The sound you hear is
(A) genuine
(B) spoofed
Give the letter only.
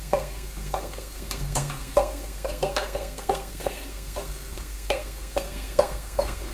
B